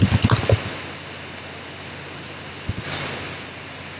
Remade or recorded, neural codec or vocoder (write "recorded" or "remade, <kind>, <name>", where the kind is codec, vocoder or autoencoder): recorded